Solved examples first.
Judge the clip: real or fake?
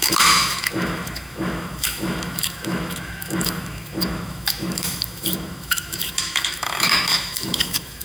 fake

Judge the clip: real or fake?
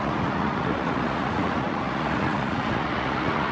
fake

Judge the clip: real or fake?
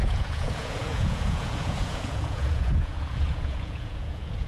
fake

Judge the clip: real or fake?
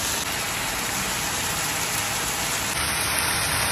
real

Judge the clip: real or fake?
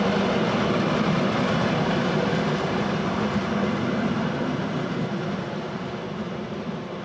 real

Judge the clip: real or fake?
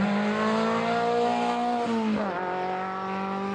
real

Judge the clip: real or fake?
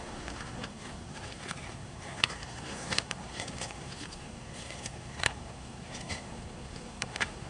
fake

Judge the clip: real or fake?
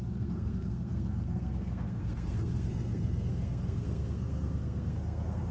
fake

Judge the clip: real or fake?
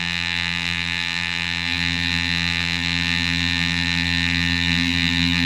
fake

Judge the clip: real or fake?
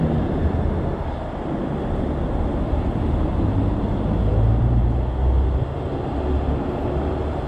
real